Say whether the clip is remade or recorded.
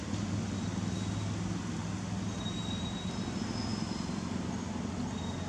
recorded